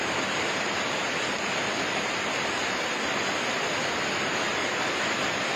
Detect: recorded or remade recorded